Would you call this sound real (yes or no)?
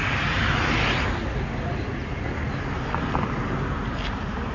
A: yes